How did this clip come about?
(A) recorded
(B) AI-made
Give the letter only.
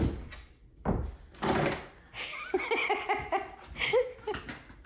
A